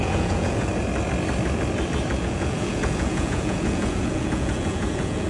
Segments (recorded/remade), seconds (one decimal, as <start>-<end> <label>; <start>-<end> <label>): 0.0-0.7 remade; 0.7-2.2 recorded; 2.2-5.3 remade